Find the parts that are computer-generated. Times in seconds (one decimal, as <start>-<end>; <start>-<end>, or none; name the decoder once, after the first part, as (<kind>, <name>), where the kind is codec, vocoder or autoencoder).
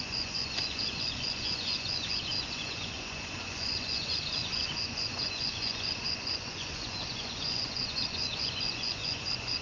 0.0-9.6 (vocoder, Vocos)